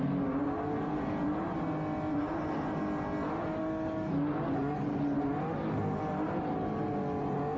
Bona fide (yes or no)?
yes